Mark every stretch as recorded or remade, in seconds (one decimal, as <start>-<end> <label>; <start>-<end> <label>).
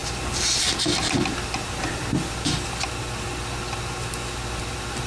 0.0-1.6 recorded; 1.6-2.9 remade; 2.9-5.1 recorded